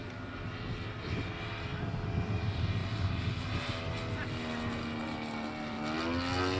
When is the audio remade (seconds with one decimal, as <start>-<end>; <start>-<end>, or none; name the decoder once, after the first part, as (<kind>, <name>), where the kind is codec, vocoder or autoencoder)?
none